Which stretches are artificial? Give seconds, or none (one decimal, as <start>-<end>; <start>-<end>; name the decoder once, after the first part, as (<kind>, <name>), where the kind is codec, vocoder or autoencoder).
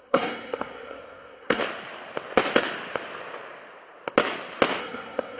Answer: 0.0-1.6 (codec, SNAC); 4.8-5.4